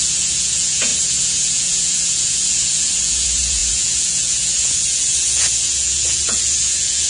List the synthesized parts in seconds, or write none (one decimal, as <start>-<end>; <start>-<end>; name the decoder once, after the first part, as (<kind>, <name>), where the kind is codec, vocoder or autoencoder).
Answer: 0.0-7.1 (vocoder, Vocos)